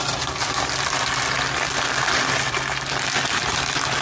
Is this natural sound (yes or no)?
yes